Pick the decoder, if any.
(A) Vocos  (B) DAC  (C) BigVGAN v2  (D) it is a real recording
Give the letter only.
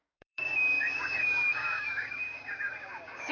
B